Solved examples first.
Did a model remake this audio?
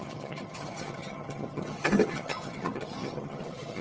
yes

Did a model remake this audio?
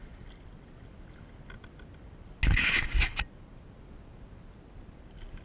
no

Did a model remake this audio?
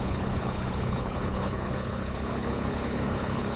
yes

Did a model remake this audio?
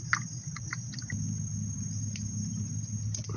no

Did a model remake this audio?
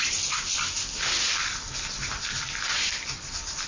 no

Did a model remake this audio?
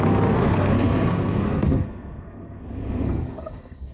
yes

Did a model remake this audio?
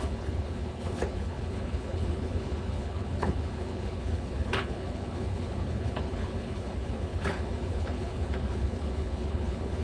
yes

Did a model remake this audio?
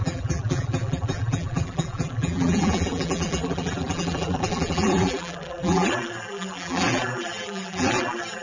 yes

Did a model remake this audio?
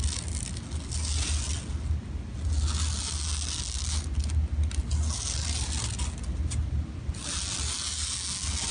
no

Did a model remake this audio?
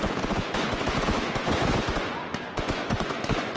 yes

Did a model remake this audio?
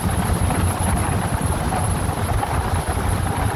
no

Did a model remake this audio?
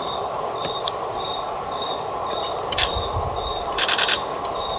no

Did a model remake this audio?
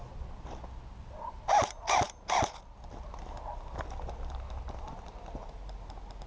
no